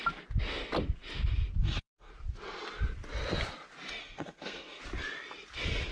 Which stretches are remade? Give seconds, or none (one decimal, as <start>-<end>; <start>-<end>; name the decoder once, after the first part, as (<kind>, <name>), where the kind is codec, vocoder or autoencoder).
1.6-2.1 (codec, SNAC); 4.0-4.8

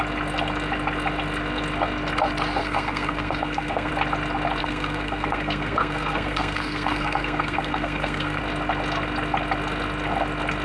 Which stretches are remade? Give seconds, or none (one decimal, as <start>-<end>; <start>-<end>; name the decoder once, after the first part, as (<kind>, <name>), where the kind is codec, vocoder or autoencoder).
2.6-3.9 (codec, SNAC); 4.6-8.4